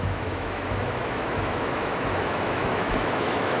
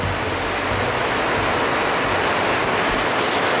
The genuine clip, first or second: second